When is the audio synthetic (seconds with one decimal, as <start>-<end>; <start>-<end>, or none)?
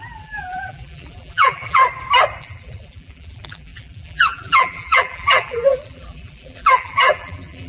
0.0-1.8; 2.4-7.7